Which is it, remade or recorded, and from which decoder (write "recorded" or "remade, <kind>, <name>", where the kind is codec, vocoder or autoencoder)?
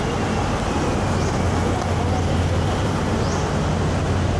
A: recorded